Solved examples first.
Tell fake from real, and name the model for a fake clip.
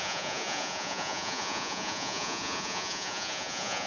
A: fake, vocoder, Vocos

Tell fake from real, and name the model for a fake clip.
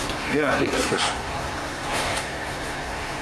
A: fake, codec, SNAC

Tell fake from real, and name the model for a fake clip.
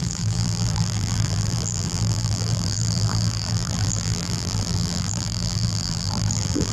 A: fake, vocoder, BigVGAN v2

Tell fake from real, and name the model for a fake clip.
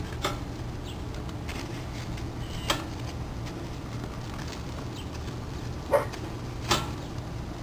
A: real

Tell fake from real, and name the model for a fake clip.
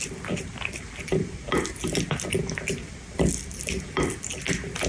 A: real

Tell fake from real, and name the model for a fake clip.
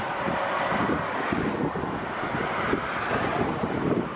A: real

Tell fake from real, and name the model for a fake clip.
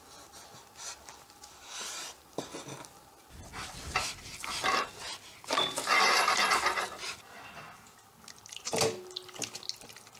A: real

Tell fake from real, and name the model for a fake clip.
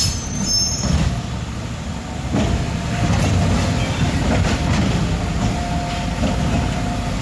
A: real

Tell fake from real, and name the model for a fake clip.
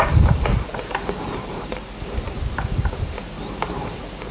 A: fake, vocoder, BigVGAN v2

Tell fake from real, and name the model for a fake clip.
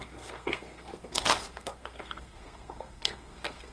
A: fake, codec, SNAC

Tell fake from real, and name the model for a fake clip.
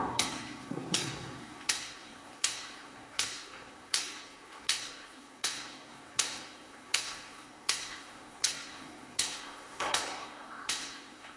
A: fake, codec, SNAC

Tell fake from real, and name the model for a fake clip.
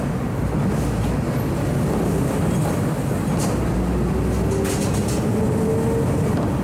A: real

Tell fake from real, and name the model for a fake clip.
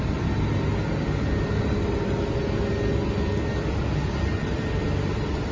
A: real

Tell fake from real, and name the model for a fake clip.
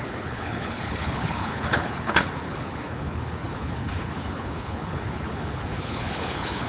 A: fake, codec, HILCodec